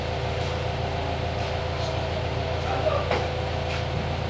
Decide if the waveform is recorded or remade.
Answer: recorded